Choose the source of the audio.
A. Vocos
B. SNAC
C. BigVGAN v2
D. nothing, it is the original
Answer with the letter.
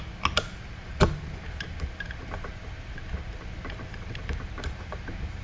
D